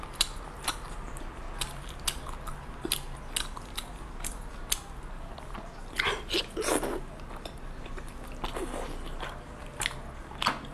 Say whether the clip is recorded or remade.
recorded